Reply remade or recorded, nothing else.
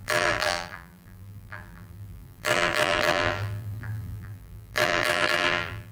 remade